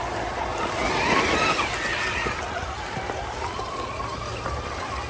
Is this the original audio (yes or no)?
yes